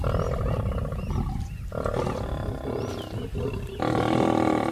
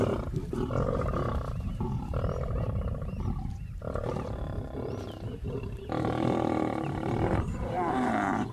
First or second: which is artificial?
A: second